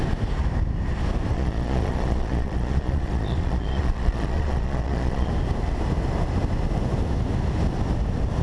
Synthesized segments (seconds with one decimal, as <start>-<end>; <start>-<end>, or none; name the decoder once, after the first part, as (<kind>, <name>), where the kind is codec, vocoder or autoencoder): 1.3-5.3 (vocoder, Vocos)